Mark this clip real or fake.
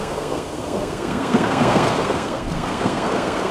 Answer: fake